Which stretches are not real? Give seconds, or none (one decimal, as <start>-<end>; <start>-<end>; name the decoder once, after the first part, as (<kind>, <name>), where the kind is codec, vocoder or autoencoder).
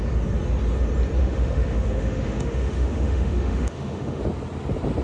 1.2-4.2 (autoencoder, DAC-VAE)